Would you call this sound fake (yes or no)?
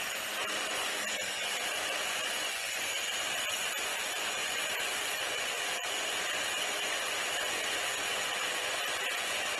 yes